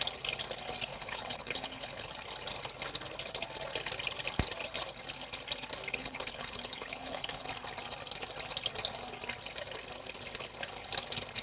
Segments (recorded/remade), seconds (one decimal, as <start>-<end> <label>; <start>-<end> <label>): 0.0-0.9 recorded; 0.9-2.1 remade; 2.1-6.0 recorded; 6.0-7.5 remade; 7.5-11.4 recorded